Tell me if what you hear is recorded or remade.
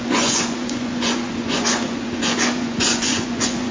remade